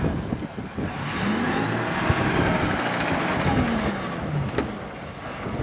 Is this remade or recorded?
recorded